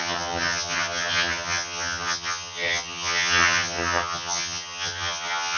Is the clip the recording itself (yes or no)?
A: no